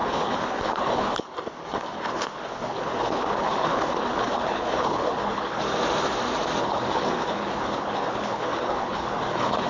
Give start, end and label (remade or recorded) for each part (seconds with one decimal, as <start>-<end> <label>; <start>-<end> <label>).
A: 0.0-5.6 remade; 5.6-6.6 recorded; 6.6-9.7 remade